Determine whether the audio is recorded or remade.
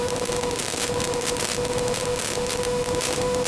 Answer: remade